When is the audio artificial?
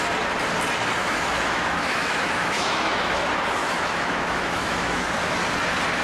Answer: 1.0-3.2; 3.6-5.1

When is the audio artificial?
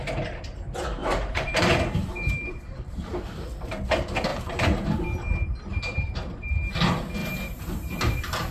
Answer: 1.0-3.2; 4.3-5.0; 5.7-6.5; 7.2-8.5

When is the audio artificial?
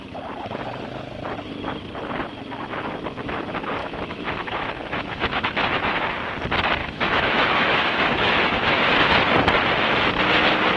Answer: 3.8-6.0; 6.8-8.8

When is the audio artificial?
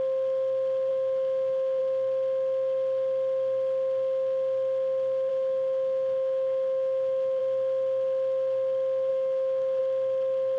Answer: 0.9-1.8; 5.3-7.4; 9.1-9.8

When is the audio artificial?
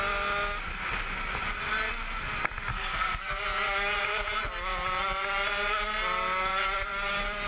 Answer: 2.7-3.3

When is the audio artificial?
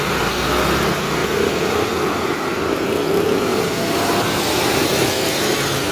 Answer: 1.2-1.9; 3.5-4.2; 4.9-5.5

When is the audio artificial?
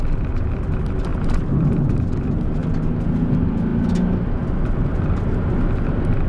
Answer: 1.1-1.8